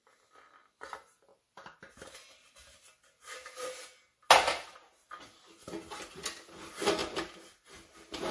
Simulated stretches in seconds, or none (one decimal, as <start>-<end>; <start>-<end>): none